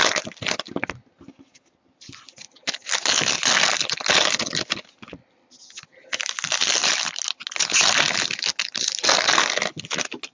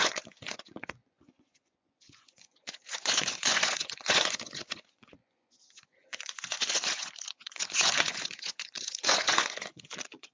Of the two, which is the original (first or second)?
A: first